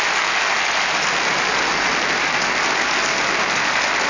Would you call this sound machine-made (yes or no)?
no